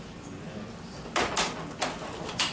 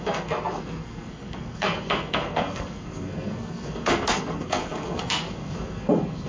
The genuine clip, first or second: first